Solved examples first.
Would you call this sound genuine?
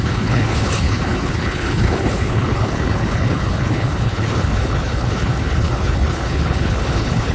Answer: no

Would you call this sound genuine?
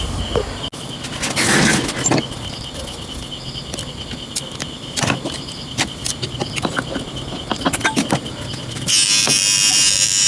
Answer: yes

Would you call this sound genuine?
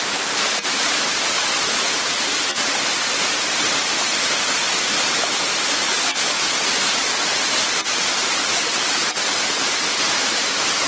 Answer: yes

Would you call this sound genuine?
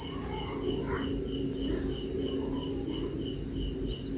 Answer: yes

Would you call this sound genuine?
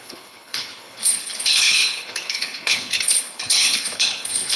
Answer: no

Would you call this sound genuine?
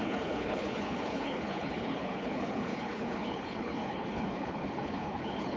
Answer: no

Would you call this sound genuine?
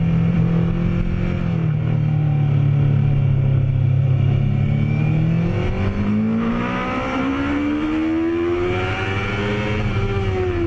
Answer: yes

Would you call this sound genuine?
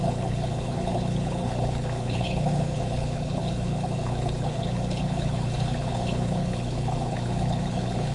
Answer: no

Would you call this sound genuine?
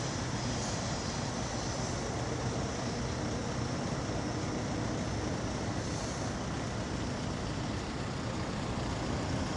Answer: yes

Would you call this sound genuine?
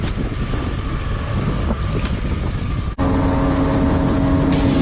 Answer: yes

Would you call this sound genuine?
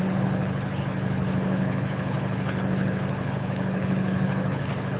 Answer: no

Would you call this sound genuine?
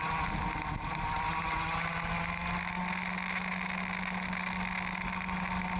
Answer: yes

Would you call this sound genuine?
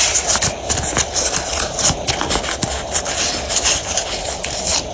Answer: yes